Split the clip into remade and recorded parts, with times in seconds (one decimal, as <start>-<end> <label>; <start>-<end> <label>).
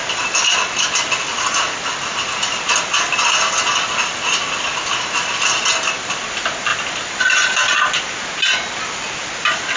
0.0-6.7 recorded; 6.7-7.5 remade; 7.5-9.8 recorded